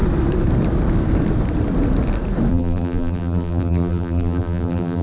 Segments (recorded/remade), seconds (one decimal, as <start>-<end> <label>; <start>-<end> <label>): 0.0-2.5 recorded; 2.5-5.0 remade